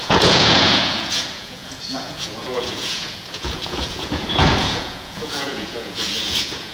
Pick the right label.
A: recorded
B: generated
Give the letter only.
B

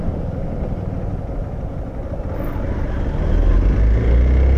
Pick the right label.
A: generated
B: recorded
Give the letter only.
B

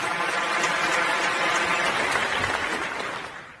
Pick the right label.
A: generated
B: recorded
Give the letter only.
B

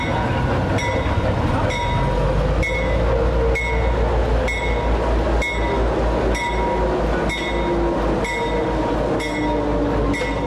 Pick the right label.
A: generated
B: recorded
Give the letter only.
B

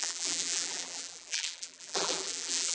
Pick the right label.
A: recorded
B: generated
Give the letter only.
B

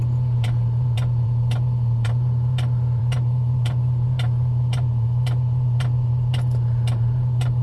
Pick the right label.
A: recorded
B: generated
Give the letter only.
B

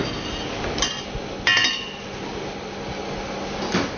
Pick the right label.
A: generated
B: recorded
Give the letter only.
B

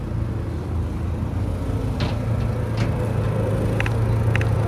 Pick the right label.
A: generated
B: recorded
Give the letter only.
B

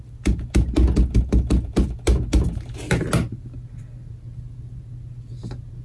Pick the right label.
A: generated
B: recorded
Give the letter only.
B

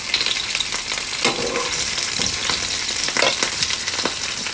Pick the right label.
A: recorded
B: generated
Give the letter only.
A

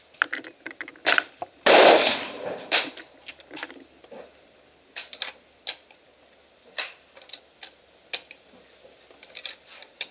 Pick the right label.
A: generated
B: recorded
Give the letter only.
B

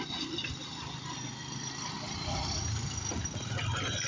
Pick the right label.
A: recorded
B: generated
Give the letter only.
A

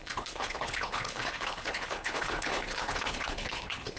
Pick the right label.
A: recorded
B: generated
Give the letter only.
B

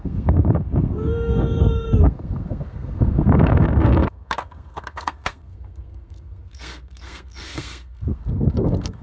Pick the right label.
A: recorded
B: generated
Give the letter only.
B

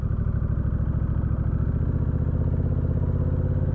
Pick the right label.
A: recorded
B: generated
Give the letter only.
A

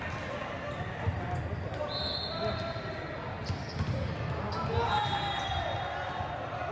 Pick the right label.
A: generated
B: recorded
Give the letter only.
B